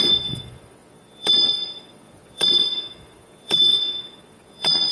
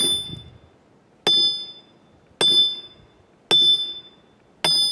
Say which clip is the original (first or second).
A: second